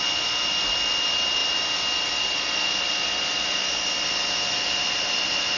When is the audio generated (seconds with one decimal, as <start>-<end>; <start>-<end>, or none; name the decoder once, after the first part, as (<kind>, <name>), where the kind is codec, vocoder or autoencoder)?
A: none